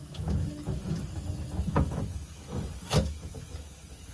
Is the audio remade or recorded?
remade